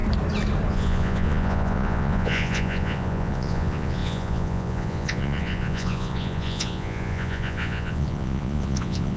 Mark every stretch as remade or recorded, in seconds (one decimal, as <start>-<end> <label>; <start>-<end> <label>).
0.0-0.7 recorded; 0.7-9.2 remade